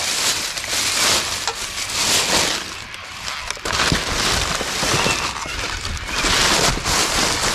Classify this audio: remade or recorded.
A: recorded